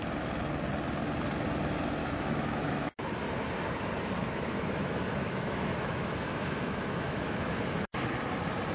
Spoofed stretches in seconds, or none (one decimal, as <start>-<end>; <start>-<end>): 2.0-3.2; 4.2-8.0